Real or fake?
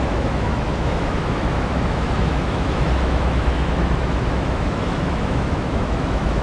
fake